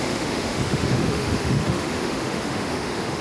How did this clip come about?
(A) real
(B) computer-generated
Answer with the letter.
B